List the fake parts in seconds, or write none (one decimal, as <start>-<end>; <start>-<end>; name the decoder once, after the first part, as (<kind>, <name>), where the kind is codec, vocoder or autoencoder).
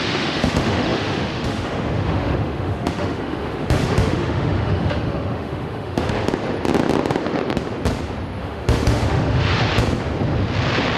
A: 0.0-6.3 (autoencoder, DAC-VAE); 8.4-9.7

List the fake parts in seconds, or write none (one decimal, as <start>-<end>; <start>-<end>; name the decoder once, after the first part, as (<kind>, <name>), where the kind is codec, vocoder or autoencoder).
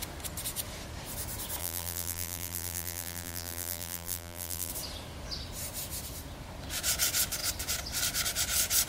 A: 1.6-4.7 (vocoder, BigVGAN v2)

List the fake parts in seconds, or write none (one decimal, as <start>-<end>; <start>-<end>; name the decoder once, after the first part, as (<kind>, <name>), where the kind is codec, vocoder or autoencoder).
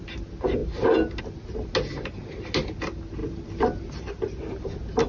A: none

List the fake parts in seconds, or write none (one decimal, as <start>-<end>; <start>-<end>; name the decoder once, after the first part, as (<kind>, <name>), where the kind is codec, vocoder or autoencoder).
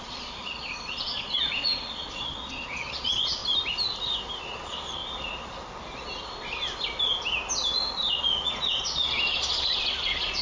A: 0.0-3.4 (vocoder, Vocos); 4.4-5.0; 8.1-10.4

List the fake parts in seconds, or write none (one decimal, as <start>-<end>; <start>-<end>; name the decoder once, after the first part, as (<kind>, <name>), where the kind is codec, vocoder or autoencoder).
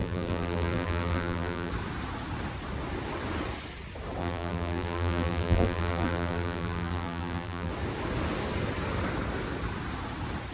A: 0.0-1.7 (vocoder, BigVGAN v2); 4.2-7.7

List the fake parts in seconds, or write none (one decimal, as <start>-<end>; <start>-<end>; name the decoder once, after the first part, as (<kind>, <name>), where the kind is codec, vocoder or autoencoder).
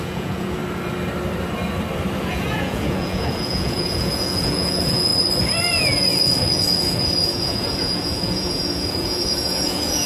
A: 0.0-0.6 (vocoder, Vocos); 2.2-5.1; 5.7-10.1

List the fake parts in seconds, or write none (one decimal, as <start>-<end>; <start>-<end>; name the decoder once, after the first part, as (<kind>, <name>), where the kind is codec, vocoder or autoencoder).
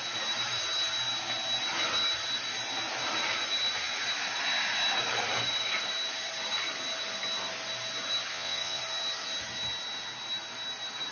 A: 8.3-8.8 (vocoder, WaveNeXt)